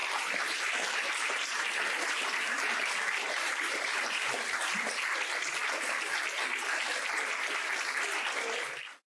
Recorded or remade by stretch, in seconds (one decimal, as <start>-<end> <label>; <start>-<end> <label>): 0.0-5.0 remade; 5.0-9.1 recorded